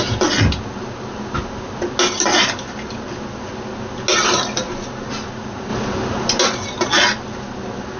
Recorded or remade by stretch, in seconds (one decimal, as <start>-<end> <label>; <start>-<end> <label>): 0.0-8.0 recorded